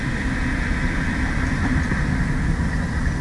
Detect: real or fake real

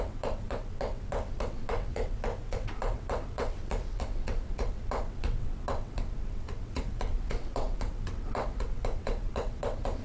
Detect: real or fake fake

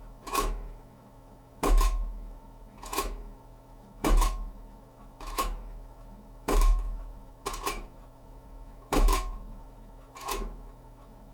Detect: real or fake fake